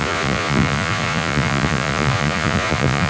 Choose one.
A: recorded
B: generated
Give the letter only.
B